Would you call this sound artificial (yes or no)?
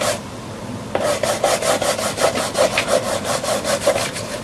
no